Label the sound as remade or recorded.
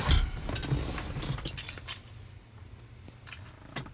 recorded